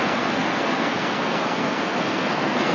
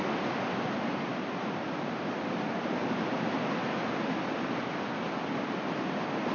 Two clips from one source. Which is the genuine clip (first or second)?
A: second